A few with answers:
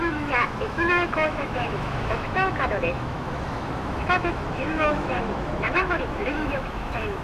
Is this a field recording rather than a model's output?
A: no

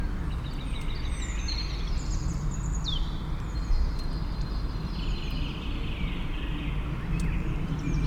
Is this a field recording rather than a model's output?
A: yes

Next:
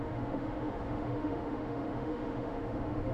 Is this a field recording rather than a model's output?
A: no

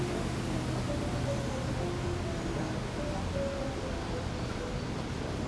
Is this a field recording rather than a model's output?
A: yes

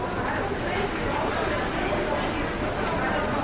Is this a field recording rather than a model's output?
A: yes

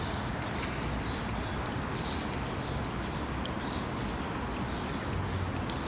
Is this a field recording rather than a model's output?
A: yes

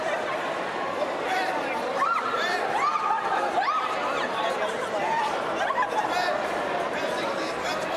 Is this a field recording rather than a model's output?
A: yes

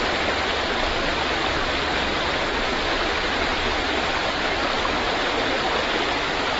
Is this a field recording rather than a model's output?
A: yes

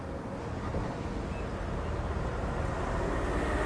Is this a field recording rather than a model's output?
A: yes